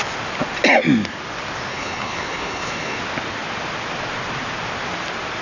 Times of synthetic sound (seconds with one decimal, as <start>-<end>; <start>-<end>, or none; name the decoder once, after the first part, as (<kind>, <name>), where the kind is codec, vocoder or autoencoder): 1.7-3.0 (codec, HILCodec)